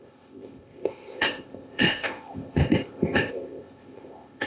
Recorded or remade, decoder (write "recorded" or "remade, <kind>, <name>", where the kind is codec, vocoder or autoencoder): remade, codec, ZipCodec